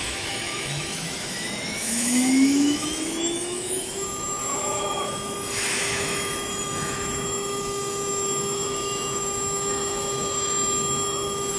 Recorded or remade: remade